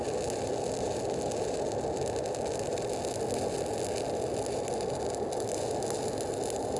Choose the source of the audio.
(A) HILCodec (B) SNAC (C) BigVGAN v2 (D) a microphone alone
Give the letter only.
D